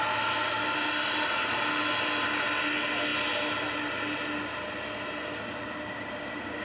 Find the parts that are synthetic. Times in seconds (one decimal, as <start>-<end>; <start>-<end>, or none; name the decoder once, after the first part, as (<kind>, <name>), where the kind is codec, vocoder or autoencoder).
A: none